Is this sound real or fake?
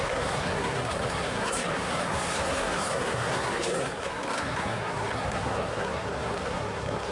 fake